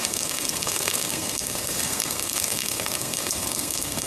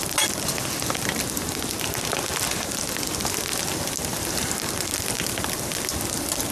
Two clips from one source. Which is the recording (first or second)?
second